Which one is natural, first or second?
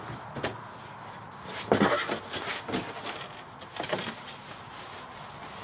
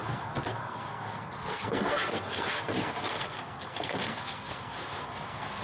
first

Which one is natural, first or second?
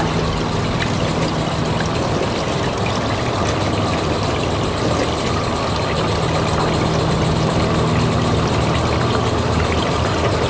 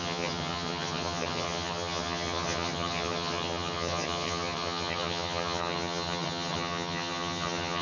first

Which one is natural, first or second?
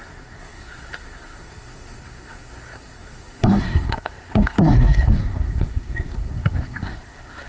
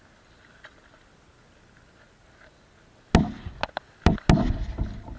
second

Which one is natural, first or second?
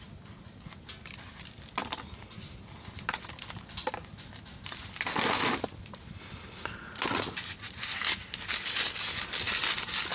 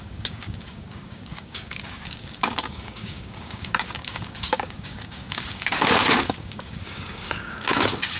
first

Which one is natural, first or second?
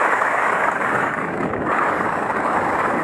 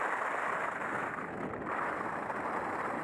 second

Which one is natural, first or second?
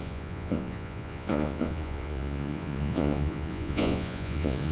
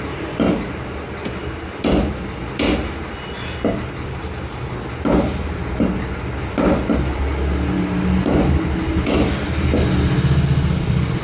second